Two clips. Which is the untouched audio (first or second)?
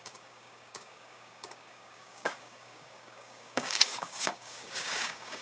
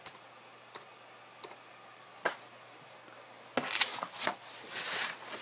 second